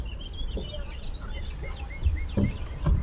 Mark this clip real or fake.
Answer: real